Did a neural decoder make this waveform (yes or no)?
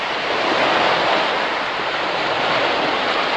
no